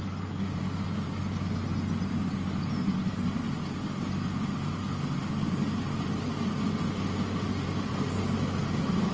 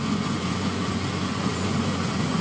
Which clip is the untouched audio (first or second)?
first